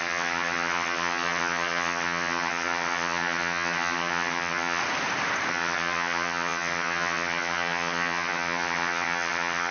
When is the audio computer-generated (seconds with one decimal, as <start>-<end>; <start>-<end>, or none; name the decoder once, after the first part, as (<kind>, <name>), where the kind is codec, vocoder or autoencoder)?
0.0-4.8 (vocoder, HiFi-GAN); 5.5-9.7